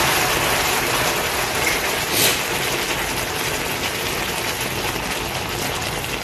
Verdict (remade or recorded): recorded